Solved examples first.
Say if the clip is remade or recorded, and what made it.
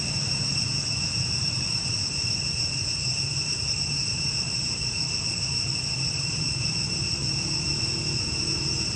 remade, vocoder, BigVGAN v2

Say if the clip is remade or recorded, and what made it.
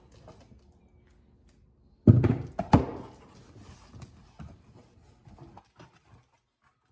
recorded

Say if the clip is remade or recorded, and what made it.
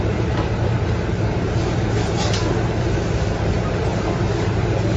remade, vocoder, BigVGAN v2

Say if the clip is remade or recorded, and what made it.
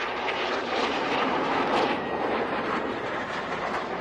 remade, vocoder, BigVGAN v2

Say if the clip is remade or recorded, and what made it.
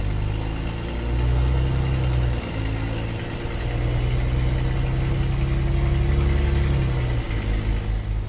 recorded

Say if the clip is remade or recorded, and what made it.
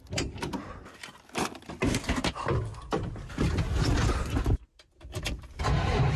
remade, vocoder, BigVGAN v2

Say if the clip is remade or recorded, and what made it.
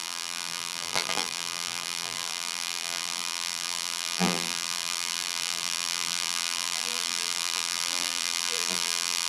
remade, vocoder, BigVGAN v2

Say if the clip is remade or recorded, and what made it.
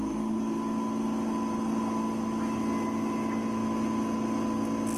recorded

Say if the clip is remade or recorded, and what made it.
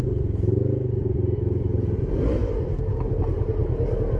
recorded